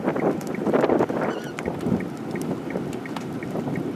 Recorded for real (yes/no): yes